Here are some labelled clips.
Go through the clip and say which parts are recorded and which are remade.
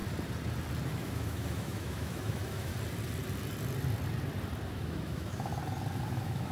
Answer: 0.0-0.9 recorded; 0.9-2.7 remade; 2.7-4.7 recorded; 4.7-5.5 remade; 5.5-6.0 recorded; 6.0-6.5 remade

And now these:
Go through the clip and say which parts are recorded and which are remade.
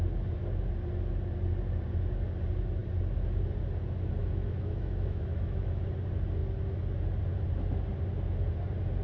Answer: 0.0-4.2 recorded; 4.2-5.8 remade; 5.8-9.0 recorded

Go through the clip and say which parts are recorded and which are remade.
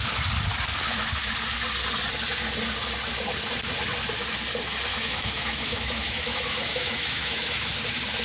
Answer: 0.0-4.9 recorded; 4.9-7.7 remade; 7.7-8.2 recorded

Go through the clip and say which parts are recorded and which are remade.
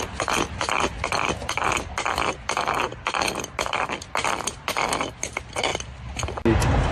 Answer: 0.0-6.9 recorded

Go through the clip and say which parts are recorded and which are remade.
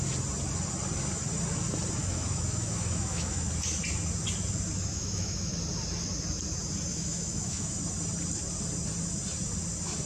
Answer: 0.0-2.0 recorded; 2.0-3.5 remade; 3.5-4.9 recorded; 4.9-5.5 remade; 5.5-6.9 recorded; 6.9-7.8 remade; 7.8-10.1 recorded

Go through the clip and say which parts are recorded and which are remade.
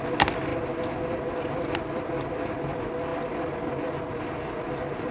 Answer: 0.0-5.1 recorded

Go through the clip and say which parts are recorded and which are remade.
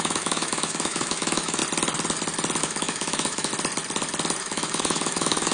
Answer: 0.0-1.6 remade; 1.6-2.6 recorded; 2.6-3.5 remade; 3.5-4.4 recorded; 4.4-5.5 remade